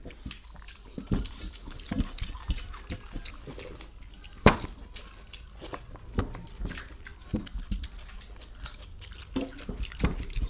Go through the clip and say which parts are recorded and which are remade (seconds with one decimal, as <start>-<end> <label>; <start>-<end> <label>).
0.0-10.5 recorded

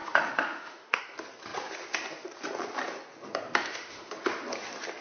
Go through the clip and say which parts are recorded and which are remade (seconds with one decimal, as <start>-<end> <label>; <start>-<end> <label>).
0.0-1.0 remade; 1.0-3.6 recorded; 3.6-4.1 remade; 4.1-5.0 recorded